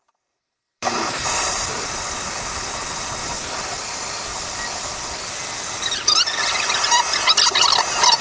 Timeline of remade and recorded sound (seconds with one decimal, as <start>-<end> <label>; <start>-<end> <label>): 0.0-2.1 remade; 2.1-4.3 recorded; 4.3-5.0 remade; 5.0-8.2 recorded